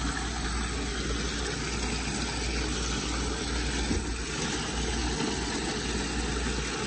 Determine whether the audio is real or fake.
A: real